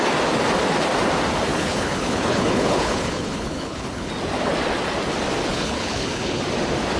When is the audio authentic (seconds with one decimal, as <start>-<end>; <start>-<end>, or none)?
0.0-1.5; 4.1-5.5; 6.4-7.0